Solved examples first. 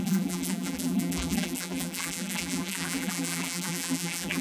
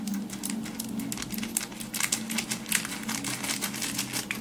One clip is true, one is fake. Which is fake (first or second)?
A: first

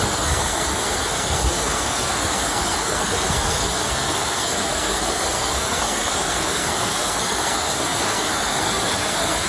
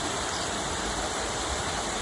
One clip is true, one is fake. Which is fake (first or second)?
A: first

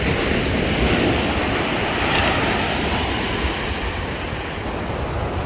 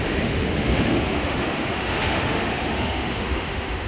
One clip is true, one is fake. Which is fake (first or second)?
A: second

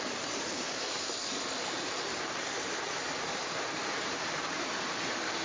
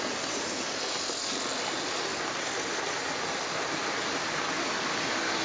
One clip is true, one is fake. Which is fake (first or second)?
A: first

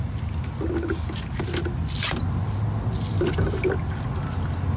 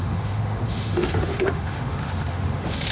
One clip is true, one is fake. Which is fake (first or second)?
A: second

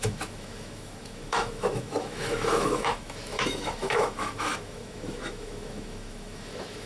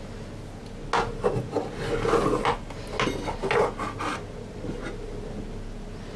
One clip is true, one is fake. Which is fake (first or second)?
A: first